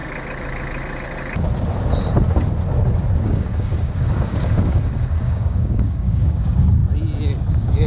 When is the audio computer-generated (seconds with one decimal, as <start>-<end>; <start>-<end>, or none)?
3.2-6.8; 7.5-7.9